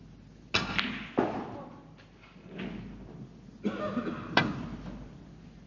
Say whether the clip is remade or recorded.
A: recorded